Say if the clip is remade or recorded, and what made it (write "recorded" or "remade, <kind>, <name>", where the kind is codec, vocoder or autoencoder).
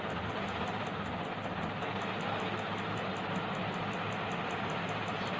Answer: recorded